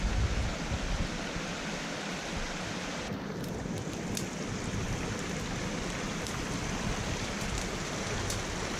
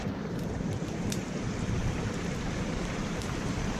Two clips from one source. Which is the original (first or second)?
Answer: first